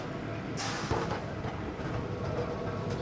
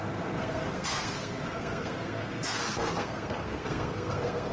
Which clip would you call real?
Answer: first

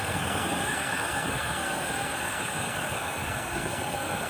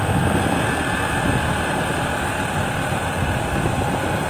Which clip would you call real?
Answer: second